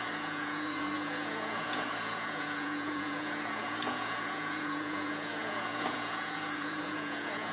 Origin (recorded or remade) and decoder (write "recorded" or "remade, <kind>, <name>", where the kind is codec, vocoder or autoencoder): remade, vocoder, Vocos